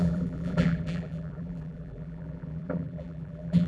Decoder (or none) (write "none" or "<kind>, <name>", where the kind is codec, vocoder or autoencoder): vocoder, BigVGAN v2